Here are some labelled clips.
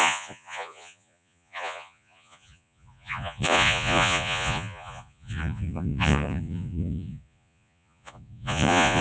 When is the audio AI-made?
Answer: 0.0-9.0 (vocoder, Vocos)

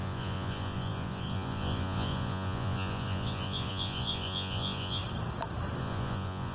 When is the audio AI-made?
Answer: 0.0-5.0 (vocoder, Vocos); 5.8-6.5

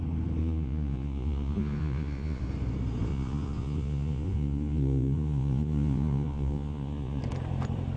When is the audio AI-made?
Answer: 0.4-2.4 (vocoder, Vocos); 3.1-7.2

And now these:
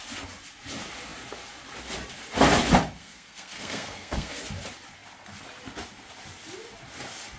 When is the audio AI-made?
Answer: 3.0-4.4 (codec, SNAC)